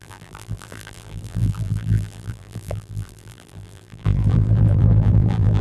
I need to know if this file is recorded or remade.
remade